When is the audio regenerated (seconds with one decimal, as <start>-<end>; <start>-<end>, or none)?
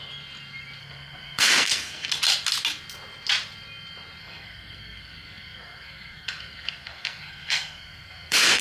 0.8-2.1; 4.2-8.6